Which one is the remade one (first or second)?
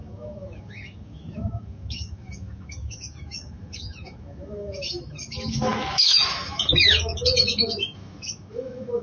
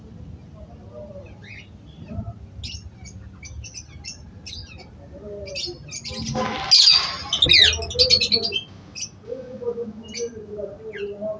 first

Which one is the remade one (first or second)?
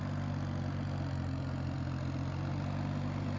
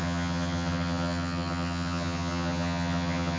second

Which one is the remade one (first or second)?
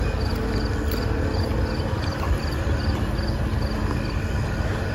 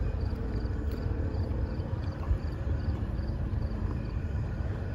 second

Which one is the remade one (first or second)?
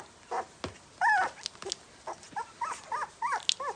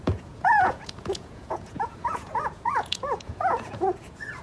second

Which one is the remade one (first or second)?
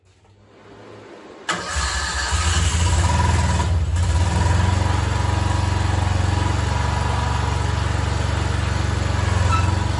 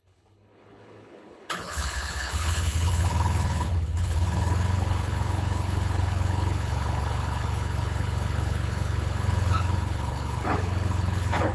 second